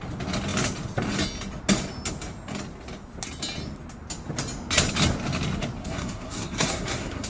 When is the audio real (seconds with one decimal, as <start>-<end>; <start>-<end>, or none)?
0.0-5.8